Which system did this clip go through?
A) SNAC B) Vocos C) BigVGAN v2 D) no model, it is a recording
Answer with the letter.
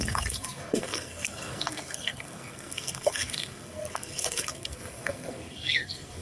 A